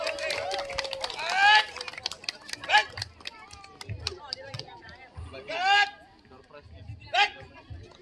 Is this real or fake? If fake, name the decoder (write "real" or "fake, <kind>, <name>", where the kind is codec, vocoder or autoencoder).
real